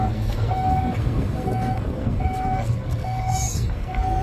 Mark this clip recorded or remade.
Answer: remade